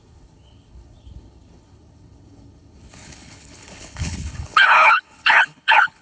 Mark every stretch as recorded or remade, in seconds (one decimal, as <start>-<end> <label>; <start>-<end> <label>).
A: 0.0-6.0 remade